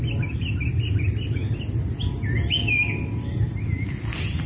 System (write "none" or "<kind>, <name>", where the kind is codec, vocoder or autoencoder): none